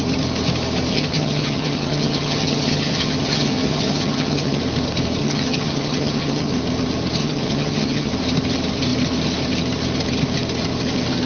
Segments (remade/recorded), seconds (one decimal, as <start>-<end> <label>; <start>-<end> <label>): 0.0-0.9 recorded; 0.9-4.6 remade; 4.6-5.2 recorded; 5.2-6.5 remade; 6.5-7.2 recorded; 7.2-8.1 remade; 8.1-11.3 recorded